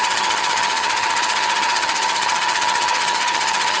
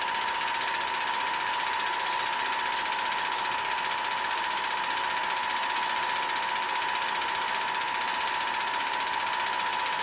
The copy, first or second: first